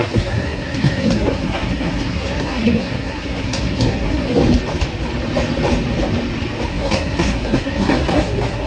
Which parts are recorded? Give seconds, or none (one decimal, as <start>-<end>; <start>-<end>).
4.4-6.7